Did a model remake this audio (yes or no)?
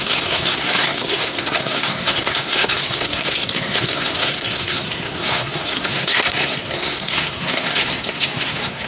yes